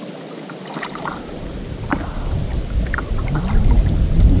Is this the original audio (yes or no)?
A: yes